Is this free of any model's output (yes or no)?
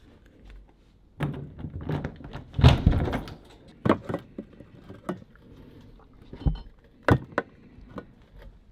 yes